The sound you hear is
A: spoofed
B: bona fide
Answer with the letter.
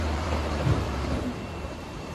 A